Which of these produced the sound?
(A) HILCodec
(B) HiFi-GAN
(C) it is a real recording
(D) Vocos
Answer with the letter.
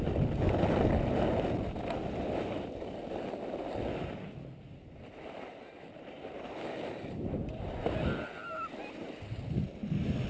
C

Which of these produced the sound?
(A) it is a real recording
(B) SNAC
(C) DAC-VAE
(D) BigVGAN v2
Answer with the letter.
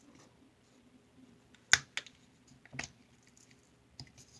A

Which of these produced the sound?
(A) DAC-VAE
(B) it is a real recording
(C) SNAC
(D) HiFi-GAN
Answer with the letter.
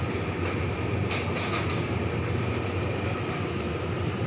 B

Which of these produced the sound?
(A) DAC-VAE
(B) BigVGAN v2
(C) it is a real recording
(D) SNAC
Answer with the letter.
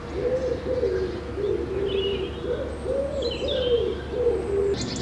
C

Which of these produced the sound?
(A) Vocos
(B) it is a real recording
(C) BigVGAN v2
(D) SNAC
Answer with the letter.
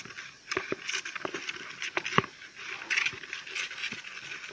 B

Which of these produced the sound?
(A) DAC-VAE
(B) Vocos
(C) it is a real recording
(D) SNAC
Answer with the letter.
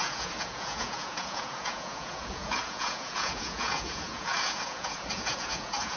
B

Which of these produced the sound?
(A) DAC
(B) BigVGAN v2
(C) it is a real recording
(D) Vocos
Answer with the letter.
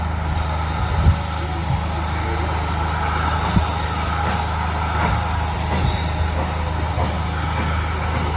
C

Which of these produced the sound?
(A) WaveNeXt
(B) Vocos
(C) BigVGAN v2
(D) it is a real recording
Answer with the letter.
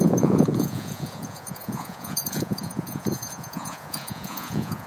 B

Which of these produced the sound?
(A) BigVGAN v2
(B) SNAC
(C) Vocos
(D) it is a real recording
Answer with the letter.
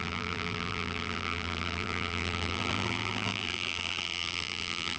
A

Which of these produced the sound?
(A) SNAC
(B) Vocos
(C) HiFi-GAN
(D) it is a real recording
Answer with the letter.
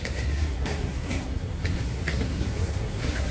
A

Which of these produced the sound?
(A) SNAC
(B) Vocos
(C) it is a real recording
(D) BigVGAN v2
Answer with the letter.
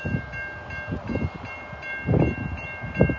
C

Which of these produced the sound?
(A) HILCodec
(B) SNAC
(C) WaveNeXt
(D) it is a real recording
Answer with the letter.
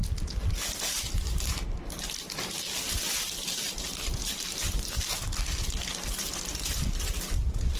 D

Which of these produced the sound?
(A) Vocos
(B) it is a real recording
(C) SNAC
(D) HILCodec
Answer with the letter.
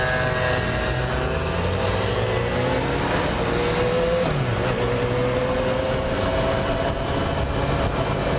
B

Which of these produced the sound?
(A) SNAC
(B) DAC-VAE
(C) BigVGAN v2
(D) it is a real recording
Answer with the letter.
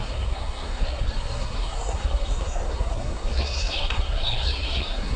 A